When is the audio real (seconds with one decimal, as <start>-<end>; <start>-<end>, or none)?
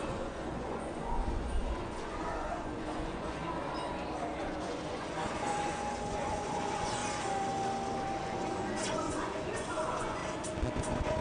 3.4-4.4; 7.0-8.2; 10.2-10.7